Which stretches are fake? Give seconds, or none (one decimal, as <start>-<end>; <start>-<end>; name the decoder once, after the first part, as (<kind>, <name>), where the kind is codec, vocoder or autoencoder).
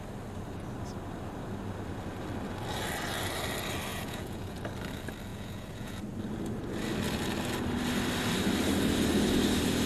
3.9-4.6 (vocoder, Vocos); 5.3-6.0